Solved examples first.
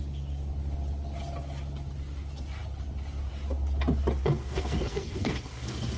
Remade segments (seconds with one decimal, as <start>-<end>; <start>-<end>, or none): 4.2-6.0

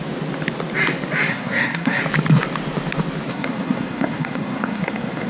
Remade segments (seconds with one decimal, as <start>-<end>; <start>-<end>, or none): 1.3-2.0; 3.3-5.3

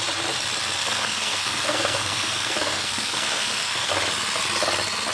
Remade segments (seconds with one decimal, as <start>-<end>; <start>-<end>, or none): 0.8-3.9